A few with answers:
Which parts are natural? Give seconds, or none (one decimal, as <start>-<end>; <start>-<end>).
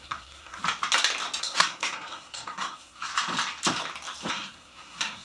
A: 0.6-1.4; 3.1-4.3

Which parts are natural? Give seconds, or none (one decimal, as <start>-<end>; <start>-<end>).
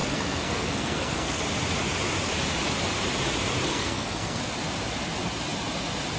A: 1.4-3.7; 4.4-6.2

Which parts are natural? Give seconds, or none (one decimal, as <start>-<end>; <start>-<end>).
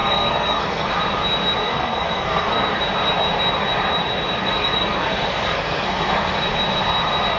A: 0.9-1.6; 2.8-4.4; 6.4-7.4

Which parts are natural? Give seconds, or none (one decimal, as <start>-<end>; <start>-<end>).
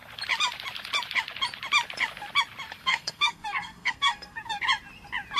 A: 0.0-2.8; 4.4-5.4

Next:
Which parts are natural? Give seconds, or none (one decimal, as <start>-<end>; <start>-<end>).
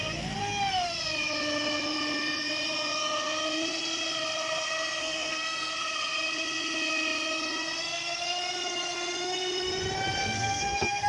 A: 0.0-5.0; 5.7-10.2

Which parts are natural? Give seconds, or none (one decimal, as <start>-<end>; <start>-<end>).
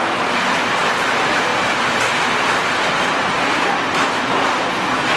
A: 0.0-5.2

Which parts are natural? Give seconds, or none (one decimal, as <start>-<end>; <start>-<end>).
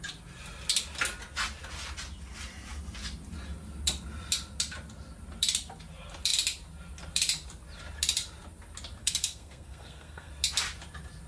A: 0.0-9.0; 10.3-11.3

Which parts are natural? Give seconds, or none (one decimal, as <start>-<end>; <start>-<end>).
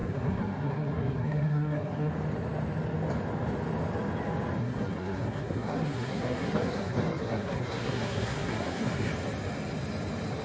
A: 2.1-4.6; 9.1-10.4